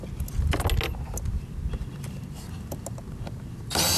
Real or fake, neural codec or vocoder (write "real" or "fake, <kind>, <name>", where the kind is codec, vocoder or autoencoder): real